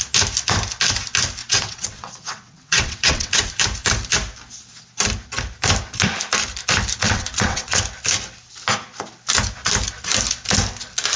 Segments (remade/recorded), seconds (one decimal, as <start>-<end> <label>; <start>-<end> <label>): 0.0-1.4 recorded; 1.4-3.5 remade; 3.5-7.0 recorded; 7.0-7.8 remade; 7.8-11.2 recorded

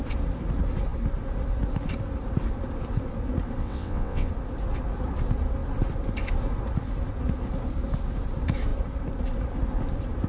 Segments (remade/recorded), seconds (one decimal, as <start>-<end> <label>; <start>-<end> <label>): 0.0-3.6 recorded; 3.6-4.3 remade; 4.3-10.3 recorded

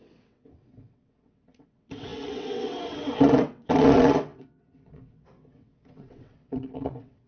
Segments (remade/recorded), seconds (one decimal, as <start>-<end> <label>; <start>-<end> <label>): 0.0-7.3 remade